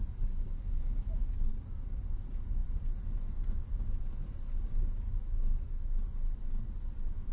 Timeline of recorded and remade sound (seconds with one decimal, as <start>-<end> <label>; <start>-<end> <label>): 0.0-1.5 recorded; 1.5-2.2 remade; 2.2-7.3 recorded